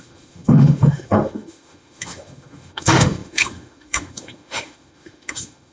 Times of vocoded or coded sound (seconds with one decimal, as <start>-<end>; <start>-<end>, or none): 0.0-5.7